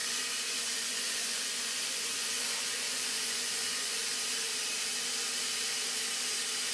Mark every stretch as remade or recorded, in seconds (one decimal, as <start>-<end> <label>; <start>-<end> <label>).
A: 0.0-4.0 remade; 4.0-6.7 recorded